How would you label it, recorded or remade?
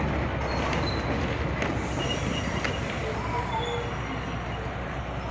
recorded